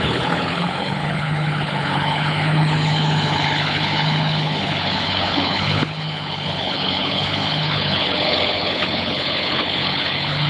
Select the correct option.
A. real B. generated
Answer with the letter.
B